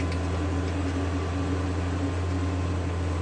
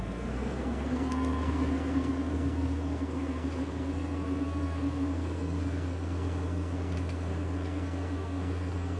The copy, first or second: second